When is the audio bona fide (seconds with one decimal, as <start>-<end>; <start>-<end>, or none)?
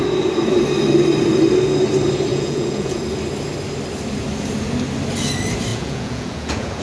0.0-2.3; 3.0-5.7